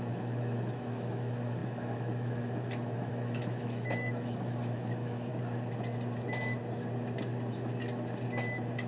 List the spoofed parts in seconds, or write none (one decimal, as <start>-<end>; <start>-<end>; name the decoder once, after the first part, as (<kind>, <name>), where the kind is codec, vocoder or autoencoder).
0.0-5.3 (autoencoder, DAC-VAE)